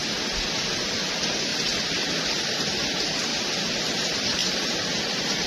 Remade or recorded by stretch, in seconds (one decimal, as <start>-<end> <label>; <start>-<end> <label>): 0.0-0.6 recorded; 0.6-1.5 remade; 1.5-2.1 recorded; 2.1-3.3 remade; 3.3-3.9 recorded; 3.9-5.5 remade